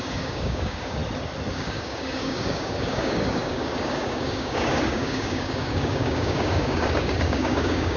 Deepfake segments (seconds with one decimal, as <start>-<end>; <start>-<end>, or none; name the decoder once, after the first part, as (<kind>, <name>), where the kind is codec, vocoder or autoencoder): 0.0-1.0 (codec, DAC); 1.5-8.0